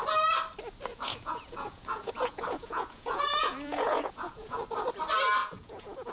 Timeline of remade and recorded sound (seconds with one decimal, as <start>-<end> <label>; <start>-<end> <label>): 0.0-0.9 recorded; 0.9-4.6 remade; 4.6-5.4 recorded; 5.4-6.1 remade